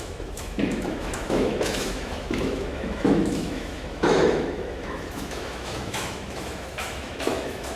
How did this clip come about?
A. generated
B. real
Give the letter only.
A